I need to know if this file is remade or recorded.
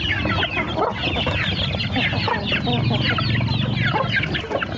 recorded